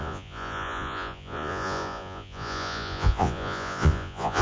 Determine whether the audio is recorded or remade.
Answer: remade